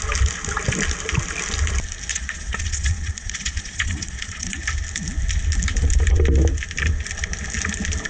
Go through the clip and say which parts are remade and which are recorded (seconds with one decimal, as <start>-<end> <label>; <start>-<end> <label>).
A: 0.0-2.1 recorded; 2.1-4.6 remade; 4.6-8.1 recorded